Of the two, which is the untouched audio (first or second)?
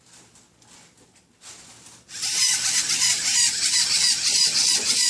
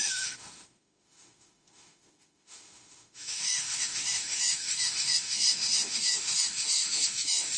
first